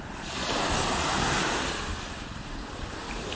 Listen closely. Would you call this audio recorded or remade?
recorded